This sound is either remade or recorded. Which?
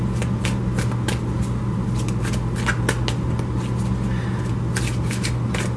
recorded